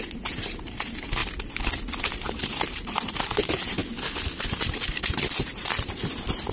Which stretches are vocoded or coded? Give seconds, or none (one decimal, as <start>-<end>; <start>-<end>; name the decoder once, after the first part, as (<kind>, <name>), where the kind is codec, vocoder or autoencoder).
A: 0.0-1.2 (vocoder, BigVGAN v2); 2.1-3.8; 4.5-6.5